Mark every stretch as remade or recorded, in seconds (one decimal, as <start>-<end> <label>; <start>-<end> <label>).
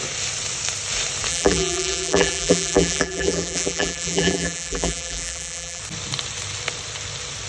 0.0-1.3 recorded; 1.3-5.8 remade; 5.8-7.5 recorded